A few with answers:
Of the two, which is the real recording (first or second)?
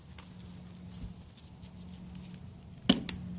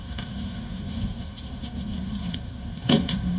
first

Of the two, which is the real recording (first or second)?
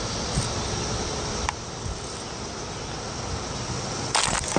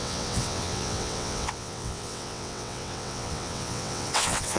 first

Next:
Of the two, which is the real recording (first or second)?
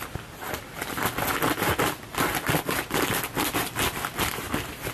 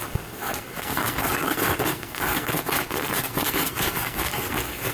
first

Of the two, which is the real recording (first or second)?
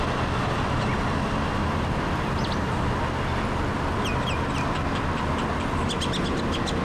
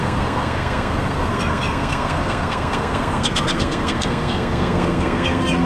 first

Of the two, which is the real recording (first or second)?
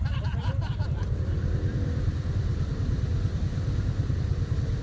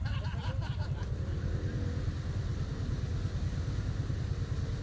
second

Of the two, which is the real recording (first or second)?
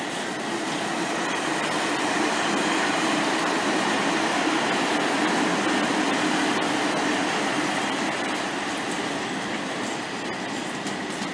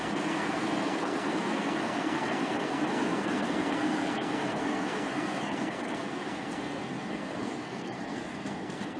first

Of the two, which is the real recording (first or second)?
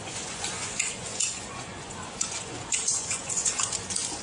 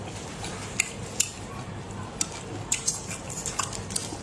second